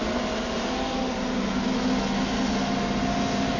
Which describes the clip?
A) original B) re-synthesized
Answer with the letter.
A